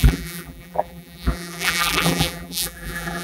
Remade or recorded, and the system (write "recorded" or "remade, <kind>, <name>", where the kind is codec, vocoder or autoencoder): remade, vocoder, BigVGAN v2